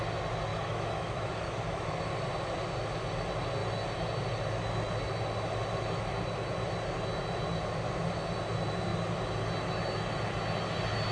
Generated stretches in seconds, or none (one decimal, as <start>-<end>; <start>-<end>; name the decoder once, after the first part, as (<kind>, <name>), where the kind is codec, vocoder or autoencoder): 0.5-2.0 (autoencoder, DAC-VAE)